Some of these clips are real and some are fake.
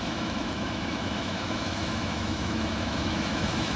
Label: fake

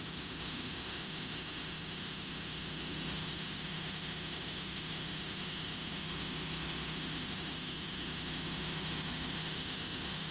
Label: fake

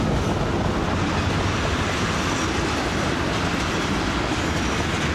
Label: real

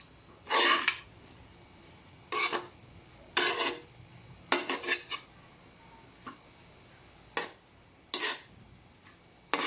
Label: real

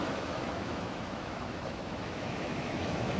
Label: fake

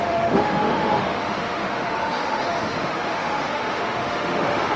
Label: fake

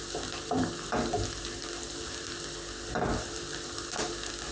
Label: real